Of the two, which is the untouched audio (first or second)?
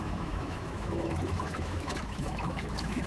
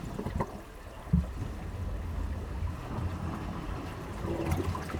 second